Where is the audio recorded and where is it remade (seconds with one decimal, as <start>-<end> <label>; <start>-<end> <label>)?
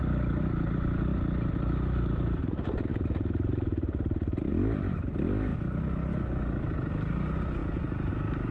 0.0-2.9 recorded; 2.9-4.5 remade; 4.5-8.5 recorded